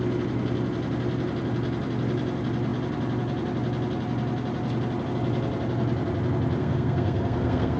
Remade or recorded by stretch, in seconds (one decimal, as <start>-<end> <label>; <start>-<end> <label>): 0.0-6.6 recorded; 6.6-7.8 remade